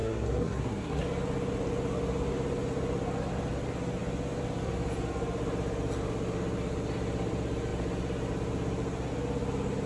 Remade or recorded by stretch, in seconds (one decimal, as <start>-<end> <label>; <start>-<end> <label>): 0.0-1.0 remade; 1.0-9.9 recorded